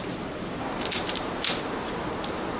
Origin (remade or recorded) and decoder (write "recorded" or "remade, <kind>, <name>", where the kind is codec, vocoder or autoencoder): remade, vocoder, BigVGAN v2